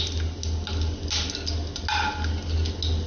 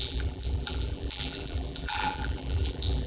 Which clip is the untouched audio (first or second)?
first